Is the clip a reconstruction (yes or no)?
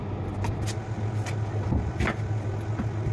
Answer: no